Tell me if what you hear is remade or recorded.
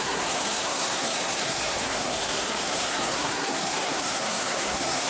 remade